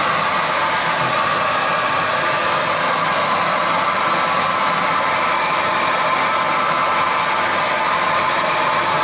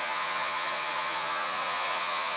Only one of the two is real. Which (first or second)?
first